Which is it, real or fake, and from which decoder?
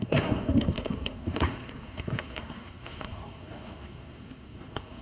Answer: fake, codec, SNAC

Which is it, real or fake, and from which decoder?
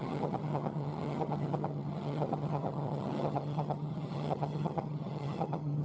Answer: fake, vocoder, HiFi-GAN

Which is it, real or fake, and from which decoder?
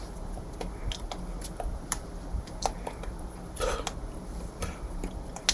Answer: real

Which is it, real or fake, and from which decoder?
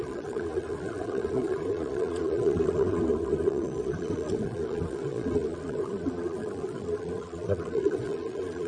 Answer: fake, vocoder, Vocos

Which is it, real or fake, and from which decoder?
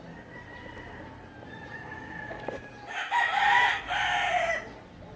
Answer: real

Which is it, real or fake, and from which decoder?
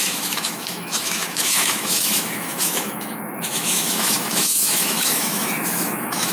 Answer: fake, autoencoder, DAC-VAE